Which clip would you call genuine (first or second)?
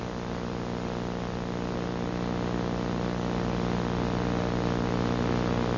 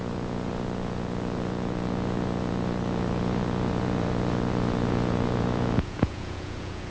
first